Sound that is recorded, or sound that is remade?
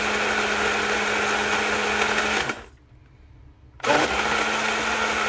recorded